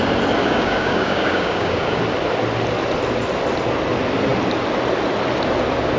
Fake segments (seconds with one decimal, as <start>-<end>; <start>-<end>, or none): 0.4-2.0